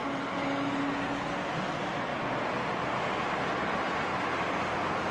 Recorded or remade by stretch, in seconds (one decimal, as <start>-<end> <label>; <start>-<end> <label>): 0.0-4.1 recorded; 4.1-5.1 remade